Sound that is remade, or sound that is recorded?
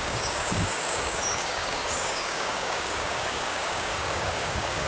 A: remade